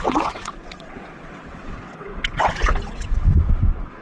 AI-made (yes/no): yes